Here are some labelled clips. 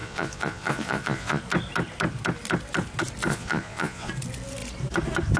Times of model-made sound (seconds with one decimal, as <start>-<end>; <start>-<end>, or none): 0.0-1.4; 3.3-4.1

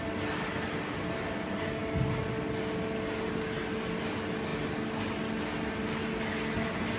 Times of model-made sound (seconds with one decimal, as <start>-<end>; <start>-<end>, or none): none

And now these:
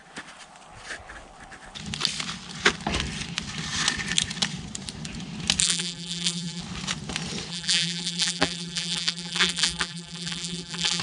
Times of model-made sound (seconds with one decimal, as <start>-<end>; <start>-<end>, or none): 5.6-6.6; 7.5-11.0

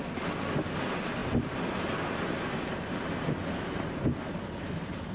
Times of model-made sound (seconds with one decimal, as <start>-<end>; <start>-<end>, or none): none

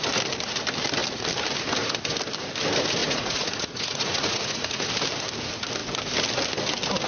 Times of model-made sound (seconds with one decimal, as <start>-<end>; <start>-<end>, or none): 3.0-4.9